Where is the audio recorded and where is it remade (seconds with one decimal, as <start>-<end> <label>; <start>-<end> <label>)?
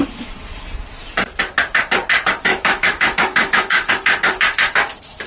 0.0-2.5 recorded; 2.5-3.9 remade; 3.9-5.3 recorded